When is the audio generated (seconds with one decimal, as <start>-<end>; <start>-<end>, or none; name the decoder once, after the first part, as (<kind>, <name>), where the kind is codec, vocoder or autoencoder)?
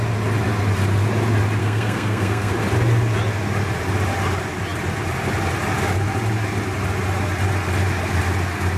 1.6-2.5 (codec, SNAC)